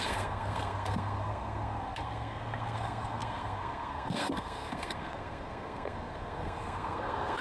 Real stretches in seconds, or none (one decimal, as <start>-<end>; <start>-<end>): none